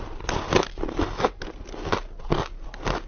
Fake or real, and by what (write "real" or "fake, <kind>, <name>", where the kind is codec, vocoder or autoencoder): real